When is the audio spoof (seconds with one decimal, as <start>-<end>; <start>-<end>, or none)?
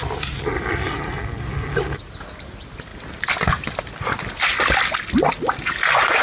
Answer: none